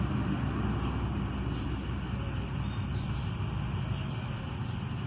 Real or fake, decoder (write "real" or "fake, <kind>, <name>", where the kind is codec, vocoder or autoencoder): real